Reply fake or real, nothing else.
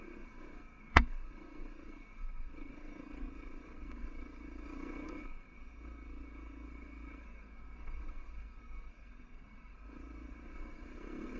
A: fake